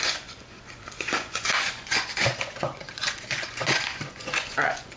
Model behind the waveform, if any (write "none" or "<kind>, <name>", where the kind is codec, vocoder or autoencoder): vocoder, Vocos